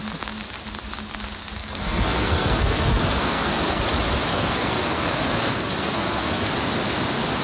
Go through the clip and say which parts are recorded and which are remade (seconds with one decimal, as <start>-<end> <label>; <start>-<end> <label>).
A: 0.0-1.6 recorded; 1.6-3.8 remade; 3.8-4.3 recorded; 4.3-6.5 remade; 6.5-7.4 recorded